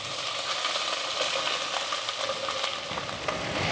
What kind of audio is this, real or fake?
real